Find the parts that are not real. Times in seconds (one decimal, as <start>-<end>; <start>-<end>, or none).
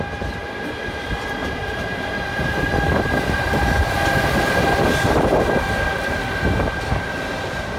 0.4-1.0; 1.4-3.9